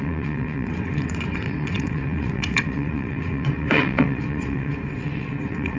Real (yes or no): no